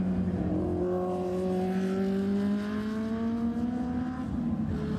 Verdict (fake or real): real